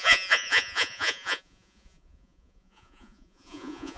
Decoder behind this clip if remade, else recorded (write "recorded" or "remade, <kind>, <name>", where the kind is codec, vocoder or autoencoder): remade, vocoder, Vocos